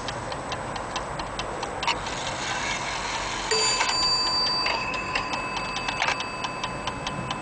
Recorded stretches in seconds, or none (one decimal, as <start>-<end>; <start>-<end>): 0.0-4.7; 5.3-7.4